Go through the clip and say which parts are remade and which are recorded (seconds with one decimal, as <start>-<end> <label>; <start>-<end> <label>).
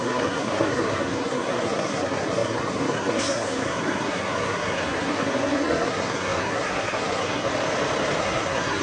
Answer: 0.0-7.5 remade; 7.5-8.2 recorded; 8.2-8.8 remade